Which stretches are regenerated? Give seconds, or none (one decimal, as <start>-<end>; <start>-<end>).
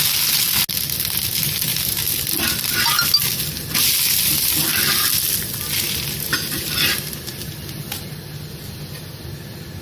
none